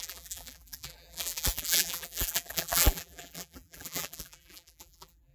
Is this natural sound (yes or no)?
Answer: no